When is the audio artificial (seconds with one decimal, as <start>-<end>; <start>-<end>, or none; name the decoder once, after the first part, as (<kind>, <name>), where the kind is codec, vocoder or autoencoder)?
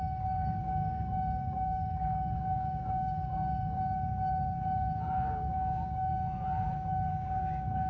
0.0-6.1 (codec, DAC); 7.1-7.9